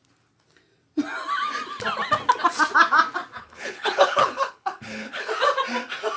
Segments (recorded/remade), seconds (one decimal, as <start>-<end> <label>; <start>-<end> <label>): 0.0-3.4 recorded; 3.4-5.3 remade; 5.3-6.2 recorded